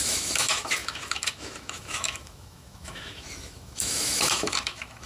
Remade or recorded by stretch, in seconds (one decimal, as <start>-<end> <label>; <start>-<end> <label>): 0.0-5.1 remade